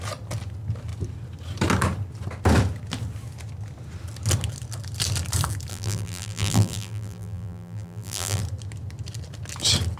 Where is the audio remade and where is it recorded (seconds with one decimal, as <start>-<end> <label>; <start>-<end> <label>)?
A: 0.0-5.7 recorded; 5.7-8.4 remade; 8.4-10.0 recorded